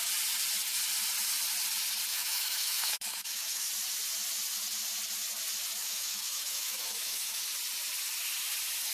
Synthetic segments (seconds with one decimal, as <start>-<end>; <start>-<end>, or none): 2.1-3.7; 5.8-7.4